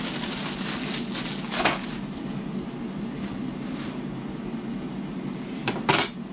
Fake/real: real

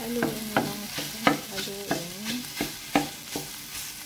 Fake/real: real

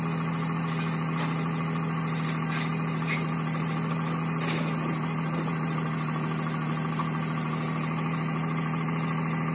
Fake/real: real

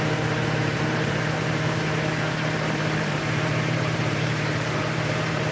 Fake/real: fake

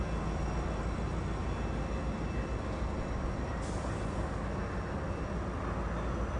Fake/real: real